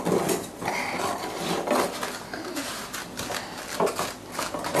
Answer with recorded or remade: recorded